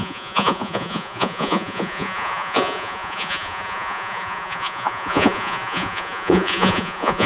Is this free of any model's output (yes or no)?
no